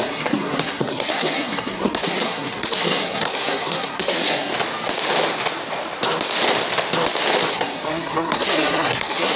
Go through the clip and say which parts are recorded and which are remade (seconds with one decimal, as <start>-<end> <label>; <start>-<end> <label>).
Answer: 0.0-4.5 remade; 4.5-7.5 recorded; 7.5-9.4 remade